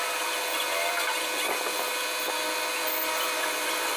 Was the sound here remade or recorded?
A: recorded